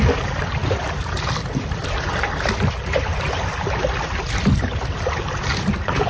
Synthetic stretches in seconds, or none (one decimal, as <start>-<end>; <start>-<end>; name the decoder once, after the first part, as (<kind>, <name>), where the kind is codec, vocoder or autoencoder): none